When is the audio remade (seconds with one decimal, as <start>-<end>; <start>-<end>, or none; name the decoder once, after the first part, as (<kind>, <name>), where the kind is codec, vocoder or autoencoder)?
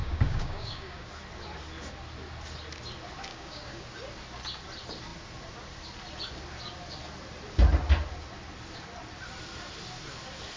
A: 0.0-1.1 (codec, DAC); 3.3-3.8